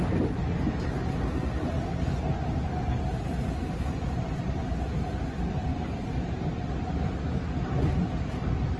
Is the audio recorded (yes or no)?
yes